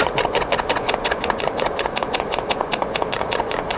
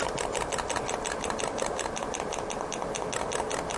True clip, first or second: second